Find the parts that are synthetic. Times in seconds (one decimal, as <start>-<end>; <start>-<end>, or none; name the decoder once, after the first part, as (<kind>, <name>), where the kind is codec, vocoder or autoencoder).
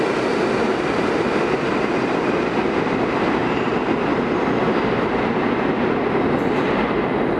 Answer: none